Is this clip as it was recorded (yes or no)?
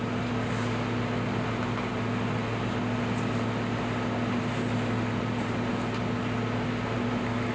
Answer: yes